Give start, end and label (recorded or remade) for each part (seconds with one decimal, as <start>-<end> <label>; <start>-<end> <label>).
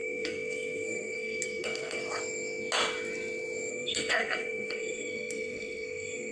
0.0-2.0 remade; 2.0-3.7 recorded; 3.7-6.3 remade